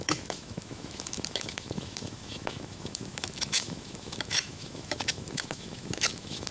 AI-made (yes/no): yes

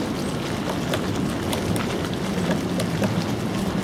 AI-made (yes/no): no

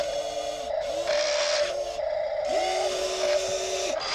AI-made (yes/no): no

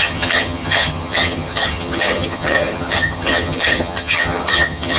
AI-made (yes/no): yes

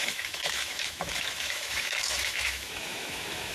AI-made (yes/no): yes